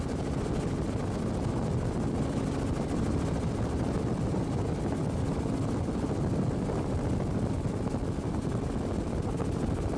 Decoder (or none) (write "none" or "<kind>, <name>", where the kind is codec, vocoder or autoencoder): none